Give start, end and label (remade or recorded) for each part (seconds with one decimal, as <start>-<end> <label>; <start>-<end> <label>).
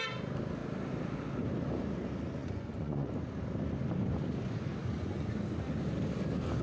0.0-2.4 recorded; 2.4-3.1 remade; 3.1-4.8 recorded; 4.8-5.3 remade; 5.3-6.6 recorded